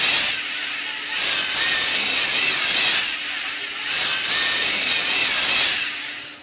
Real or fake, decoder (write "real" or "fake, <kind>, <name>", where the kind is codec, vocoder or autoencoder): real